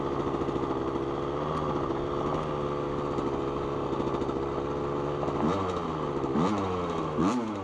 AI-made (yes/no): no